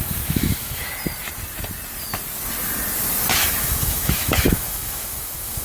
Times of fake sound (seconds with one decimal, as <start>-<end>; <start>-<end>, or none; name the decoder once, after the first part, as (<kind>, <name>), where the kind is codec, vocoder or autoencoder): 0.0-0.8 (autoencoder, DAC-VAE); 3.4-5.6